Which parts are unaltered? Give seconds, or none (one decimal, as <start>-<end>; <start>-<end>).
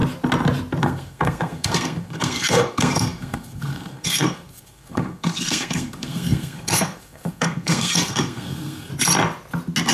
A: 0.0-0.8; 8.9-9.9